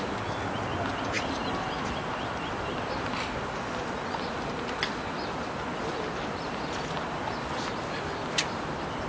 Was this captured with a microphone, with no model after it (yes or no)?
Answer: yes